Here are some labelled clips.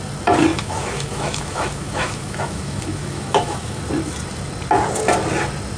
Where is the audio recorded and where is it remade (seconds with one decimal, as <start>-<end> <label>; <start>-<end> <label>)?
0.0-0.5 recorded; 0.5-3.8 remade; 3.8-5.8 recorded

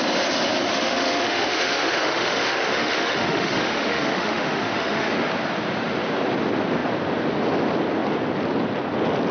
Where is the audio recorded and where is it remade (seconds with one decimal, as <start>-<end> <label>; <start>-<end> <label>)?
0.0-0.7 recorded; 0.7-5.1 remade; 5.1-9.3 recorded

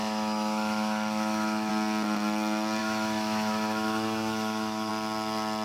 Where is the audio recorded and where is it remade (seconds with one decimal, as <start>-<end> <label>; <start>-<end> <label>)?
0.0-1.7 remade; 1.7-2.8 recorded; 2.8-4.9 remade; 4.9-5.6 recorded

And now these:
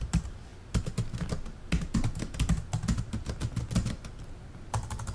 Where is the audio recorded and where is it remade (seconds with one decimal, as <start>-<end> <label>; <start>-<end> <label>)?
0.0-5.1 recorded

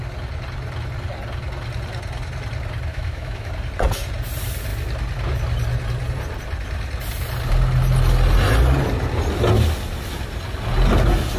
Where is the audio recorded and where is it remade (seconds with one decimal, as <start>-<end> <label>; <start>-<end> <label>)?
0.0-2.9 recorded; 2.9-3.5 remade; 3.5-11.4 recorded